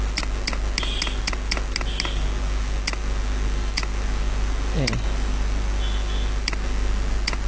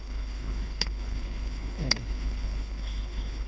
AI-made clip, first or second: second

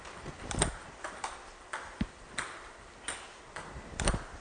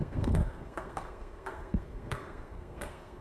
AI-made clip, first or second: second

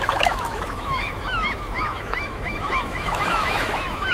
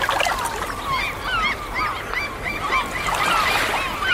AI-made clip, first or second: first